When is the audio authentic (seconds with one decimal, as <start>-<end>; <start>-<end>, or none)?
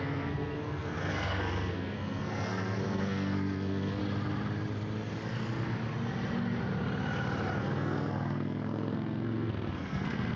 4.0-7.6